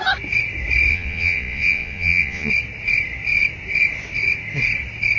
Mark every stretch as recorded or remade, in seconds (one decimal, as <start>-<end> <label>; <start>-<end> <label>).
0.0-0.9 recorded; 0.9-2.5 remade; 2.5-5.2 recorded

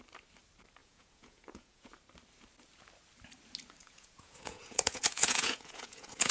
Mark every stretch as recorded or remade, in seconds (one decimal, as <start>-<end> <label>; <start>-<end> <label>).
0.0-0.8 recorded; 0.8-1.9 remade; 1.9-3.8 recorded; 3.8-6.3 remade

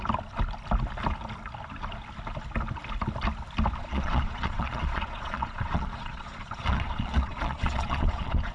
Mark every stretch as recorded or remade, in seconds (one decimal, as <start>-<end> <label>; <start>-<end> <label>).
0.0-3.8 recorded; 3.8-8.5 remade

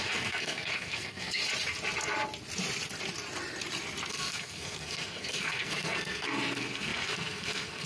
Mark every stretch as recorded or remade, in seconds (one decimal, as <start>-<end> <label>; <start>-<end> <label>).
0.0-1.4 remade; 1.4-4.1 recorded; 4.1-7.9 remade